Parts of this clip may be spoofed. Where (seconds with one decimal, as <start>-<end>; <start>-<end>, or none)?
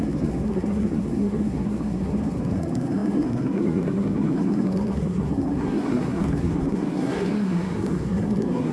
0.0-8.7